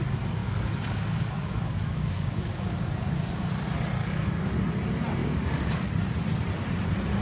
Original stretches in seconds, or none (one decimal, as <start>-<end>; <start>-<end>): 0.0-0.4; 3.5-4.0; 4.5-5.2; 5.9-7.2